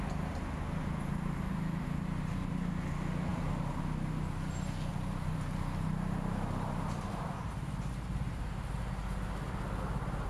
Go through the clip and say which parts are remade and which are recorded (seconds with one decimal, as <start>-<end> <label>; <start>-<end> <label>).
0.0-3.3 recorded; 3.3-3.8 remade; 3.8-4.9 recorded; 4.9-8.7 remade; 8.7-10.3 recorded